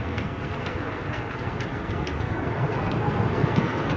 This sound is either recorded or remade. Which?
remade